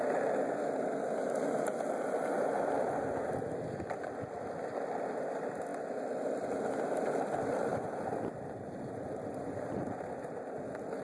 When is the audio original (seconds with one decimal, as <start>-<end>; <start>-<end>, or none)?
0.0-7.7; 10.3-11.0